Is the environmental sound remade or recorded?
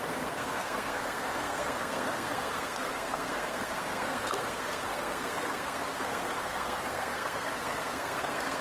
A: remade